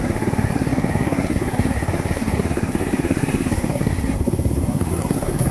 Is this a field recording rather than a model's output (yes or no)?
no